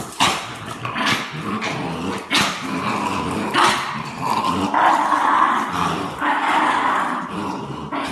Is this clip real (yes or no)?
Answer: yes